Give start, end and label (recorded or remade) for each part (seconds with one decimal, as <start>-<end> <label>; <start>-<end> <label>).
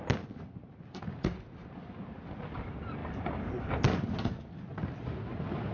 0.0-3.0 recorded; 3.0-3.7 remade; 3.7-5.7 recorded